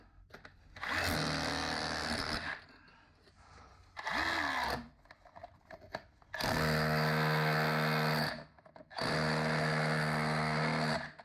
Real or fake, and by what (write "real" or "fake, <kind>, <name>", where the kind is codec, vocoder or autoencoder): real